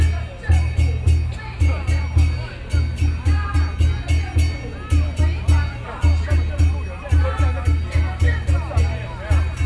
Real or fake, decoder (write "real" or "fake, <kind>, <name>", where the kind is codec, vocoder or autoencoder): real